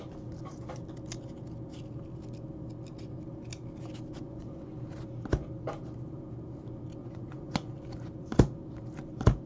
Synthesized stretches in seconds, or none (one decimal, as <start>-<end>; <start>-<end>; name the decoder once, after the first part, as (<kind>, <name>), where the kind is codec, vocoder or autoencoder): 4.1-4.7 (vocoder, Vocos); 7.0-7.7